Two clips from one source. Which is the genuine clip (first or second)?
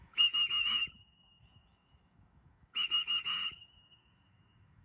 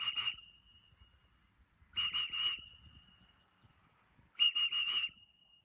second